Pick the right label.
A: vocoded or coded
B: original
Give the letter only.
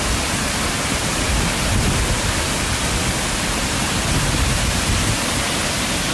B